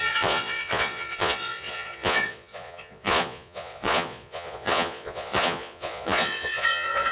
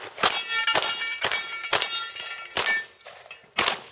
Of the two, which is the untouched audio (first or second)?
second